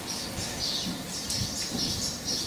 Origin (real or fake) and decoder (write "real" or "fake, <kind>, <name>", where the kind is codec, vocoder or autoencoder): real